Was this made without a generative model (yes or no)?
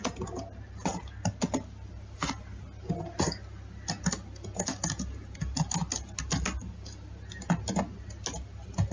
yes